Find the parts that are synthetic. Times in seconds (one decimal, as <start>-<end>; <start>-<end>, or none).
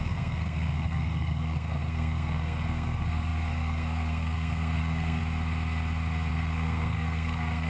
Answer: 0.0-5.2; 6.3-7.7